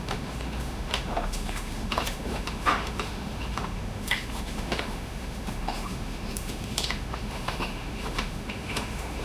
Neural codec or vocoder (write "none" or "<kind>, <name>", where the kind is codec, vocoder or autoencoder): autoencoder, DAC-VAE